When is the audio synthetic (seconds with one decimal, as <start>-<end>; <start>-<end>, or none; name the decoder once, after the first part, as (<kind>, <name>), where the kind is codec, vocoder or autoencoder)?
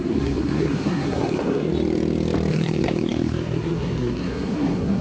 0.0-1.7 (codec, SNAC); 2.5-5.0